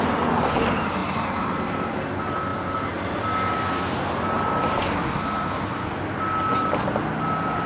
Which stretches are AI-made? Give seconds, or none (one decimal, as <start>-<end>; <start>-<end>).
none

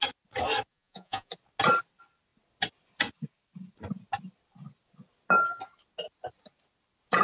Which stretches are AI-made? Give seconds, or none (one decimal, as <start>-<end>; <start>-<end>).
0.7-1.3

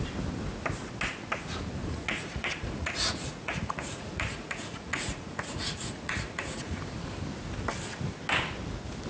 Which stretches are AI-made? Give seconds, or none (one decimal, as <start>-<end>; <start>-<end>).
1.8-6.8

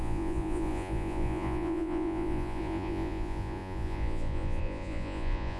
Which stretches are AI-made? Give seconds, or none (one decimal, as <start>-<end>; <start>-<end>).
0.0-5.6

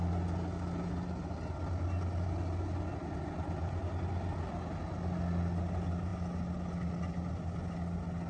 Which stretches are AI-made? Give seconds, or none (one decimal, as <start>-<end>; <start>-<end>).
none

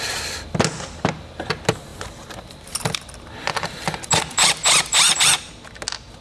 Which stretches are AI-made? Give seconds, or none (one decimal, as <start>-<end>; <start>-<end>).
none

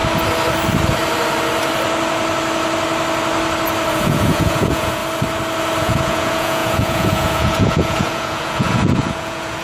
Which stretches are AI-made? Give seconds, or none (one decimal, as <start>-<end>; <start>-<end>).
3.9-5.0; 5.8-9.6

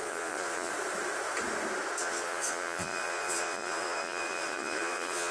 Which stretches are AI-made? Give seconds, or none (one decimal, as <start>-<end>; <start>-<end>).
0.0-0.7; 2.0-5.3